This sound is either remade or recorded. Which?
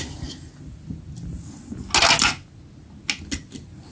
recorded